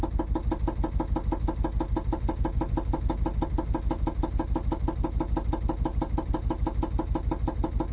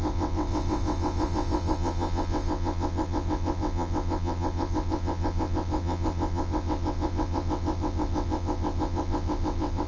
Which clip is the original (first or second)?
first